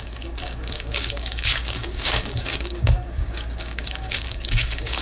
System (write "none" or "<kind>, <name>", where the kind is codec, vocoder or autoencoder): codec, DAC